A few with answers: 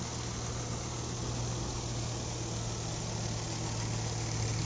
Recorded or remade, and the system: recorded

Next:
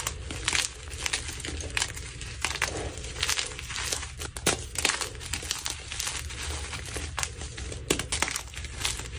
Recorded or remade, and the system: recorded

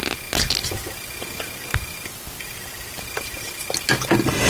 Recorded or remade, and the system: recorded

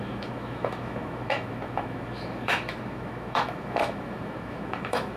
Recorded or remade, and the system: remade, autoencoder, DAC-VAE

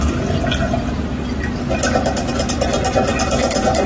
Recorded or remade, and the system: recorded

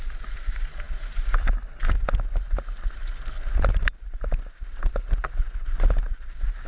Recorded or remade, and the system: recorded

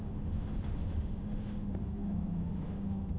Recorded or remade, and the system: remade, autoencoder, DAC-VAE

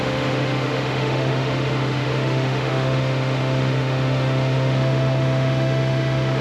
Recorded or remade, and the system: remade, autoencoder, DAC-VAE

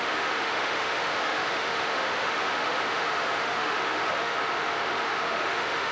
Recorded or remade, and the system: remade, autoencoder, DAC-VAE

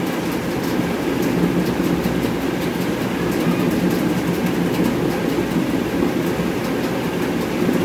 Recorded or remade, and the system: recorded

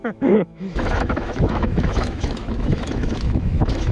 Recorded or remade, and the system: remade, autoencoder, DAC-VAE